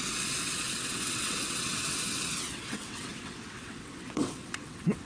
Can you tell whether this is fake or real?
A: fake